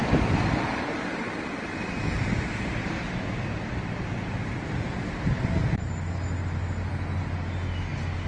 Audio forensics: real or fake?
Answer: real